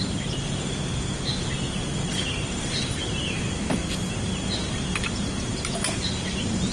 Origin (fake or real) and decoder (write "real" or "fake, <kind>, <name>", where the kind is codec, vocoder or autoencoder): real